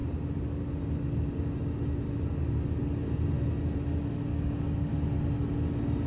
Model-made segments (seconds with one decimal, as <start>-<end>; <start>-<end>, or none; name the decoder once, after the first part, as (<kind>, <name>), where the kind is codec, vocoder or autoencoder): 4.3-4.9 (codec, DAC)